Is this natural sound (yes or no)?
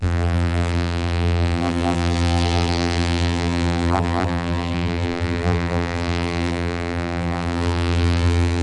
no